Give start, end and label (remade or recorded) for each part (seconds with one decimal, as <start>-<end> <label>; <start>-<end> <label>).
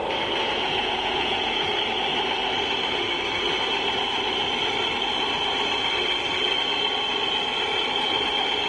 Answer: 0.0-0.4 recorded; 0.4-1.7 remade; 1.7-8.7 recorded